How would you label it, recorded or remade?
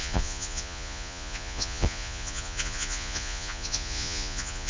remade